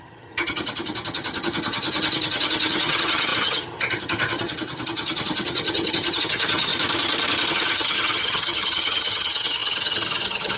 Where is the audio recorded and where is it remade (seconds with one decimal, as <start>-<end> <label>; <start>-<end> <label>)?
0.0-6.7 remade; 6.7-7.5 recorded; 7.5-10.6 remade

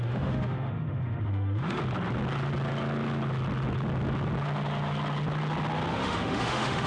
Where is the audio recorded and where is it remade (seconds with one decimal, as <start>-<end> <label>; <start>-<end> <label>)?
0.0-1.8 remade; 1.8-5.9 recorded; 5.9-6.9 remade

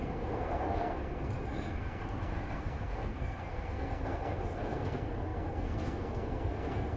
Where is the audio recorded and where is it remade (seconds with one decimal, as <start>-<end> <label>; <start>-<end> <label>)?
0.0-7.0 remade

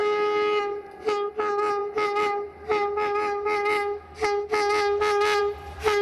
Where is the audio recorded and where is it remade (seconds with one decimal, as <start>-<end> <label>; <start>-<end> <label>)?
0.0-6.0 recorded

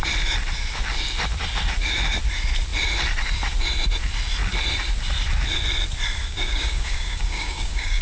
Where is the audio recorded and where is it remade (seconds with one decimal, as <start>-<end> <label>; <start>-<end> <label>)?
0.0-6.2 recorded; 6.2-8.0 remade

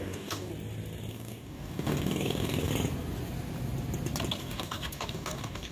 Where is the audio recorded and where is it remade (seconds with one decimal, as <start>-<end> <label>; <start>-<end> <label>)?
0.0-0.5 remade; 0.5-1.1 recorded; 1.1-2.7 remade; 2.7-4.4 recorded; 4.4-5.7 remade

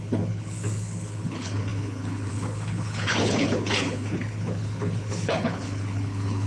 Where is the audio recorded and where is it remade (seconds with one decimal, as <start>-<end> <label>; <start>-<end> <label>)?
0.0-6.5 remade

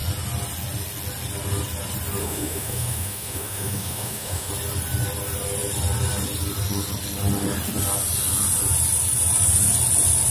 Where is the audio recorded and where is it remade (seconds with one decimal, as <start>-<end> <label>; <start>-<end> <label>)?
0.0-2.2 recorded; 2.2-4.5 remade; 4.5-10.3 recorded